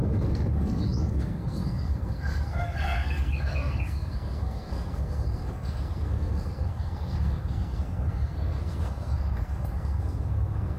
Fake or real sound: fake